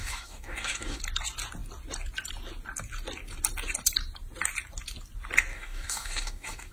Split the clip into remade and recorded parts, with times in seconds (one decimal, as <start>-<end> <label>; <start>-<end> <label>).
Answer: 0.0-1.0 remade; 1.0-5.5 recorded; 5.5-6.7 remade